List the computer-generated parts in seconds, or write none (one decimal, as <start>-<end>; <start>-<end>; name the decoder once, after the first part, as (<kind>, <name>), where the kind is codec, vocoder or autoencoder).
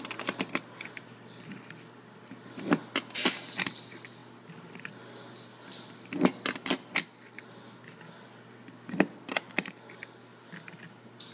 none